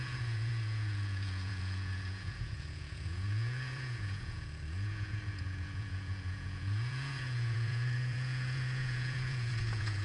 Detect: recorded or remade remade